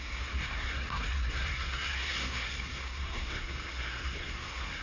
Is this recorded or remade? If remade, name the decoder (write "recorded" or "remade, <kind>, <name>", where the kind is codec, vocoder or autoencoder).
remade, codec, SNAC